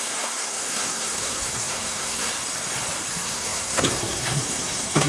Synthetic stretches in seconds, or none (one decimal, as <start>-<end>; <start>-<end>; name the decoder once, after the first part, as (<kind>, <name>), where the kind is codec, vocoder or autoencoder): 0.0-2.3 (codec, SNAC); 3.1-5.1